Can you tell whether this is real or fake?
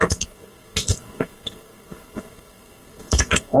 fake